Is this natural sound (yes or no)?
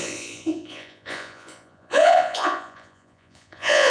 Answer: no